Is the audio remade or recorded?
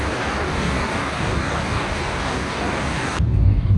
remade